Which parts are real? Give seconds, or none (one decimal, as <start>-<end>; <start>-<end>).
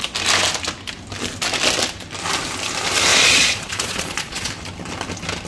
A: 0.0-3.1; 4.5-5.5